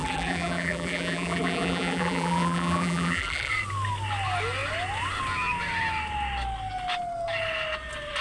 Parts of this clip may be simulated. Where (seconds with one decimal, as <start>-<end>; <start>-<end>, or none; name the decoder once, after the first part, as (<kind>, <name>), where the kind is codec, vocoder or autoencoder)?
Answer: 0.0-3.5 (vocoder, BigVGAN v2)